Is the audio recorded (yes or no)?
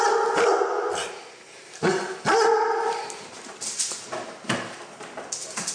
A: yes